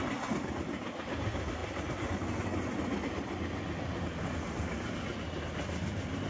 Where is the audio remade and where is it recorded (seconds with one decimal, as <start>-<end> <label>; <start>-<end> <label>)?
0.0-6.3 recorded